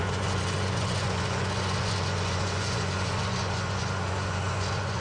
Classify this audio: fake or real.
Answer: fake